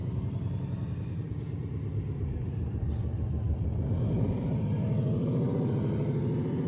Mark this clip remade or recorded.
remade